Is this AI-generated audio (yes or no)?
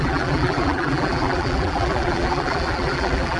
yes